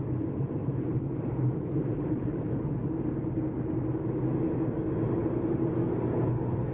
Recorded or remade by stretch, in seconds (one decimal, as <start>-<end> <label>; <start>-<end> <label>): 0.0-0.6 recorded; 0.6-2.9 remade; 2.9-5.2 recorded; 5.2-5.7 remade; 5.7-6.7 recorded